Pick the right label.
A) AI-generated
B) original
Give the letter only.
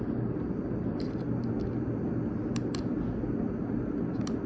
B